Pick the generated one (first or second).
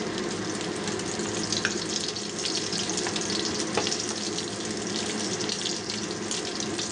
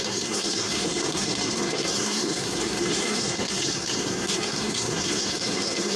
second